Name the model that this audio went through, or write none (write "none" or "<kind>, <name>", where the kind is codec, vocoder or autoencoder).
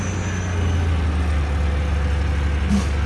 none